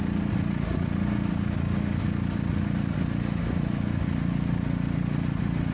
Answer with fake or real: real